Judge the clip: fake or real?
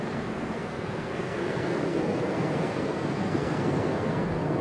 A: fake